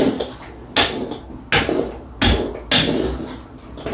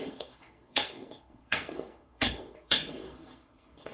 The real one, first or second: first